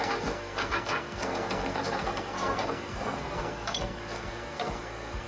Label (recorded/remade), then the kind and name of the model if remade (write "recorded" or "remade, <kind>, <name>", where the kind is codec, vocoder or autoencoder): remade, codec, SNAC